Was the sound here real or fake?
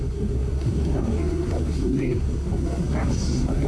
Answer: fake